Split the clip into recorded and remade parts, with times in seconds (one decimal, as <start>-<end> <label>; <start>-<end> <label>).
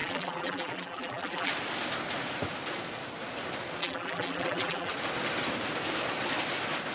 0.0-1.5 remade; 1.5-3.8 recorded; 3.8-4.9 remade; 4.9-6.9 recorded